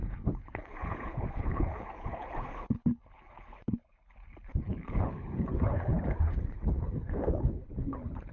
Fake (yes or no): yes